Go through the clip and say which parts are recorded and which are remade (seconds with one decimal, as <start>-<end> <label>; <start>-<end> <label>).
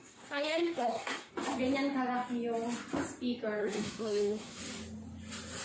0.0-1.3 remade; 1.3-3.6 recorded; 3.6-4.6 remade; 4.6-5.6 recorded